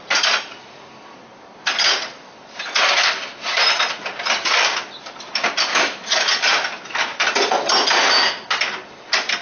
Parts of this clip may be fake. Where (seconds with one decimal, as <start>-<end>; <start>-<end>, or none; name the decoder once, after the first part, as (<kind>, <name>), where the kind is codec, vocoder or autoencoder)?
5.7-6.3 (autoencoder, DAC-VAE)

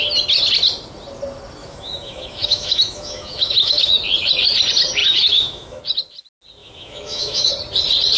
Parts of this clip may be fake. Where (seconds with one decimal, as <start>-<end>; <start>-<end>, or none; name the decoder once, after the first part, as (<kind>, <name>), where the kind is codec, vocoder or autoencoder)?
1.6-3.9 (autoencoder, DAC-VAE); 5.0-5.8; 6.6-7.5

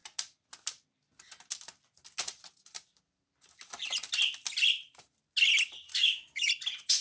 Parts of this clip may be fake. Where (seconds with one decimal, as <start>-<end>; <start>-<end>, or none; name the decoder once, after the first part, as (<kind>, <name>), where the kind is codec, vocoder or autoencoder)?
5.9-6.5 (autoencoder, DAC-VAE)

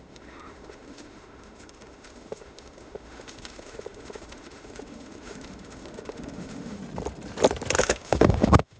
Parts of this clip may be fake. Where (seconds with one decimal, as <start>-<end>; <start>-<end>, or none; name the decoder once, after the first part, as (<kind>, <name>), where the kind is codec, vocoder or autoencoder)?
0.0-6.8 (autoencoder, DAC-VAE); 7.8-8.8

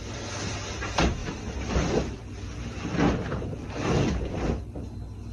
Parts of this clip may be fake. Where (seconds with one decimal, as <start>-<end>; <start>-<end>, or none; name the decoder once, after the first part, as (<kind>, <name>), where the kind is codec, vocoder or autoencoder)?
none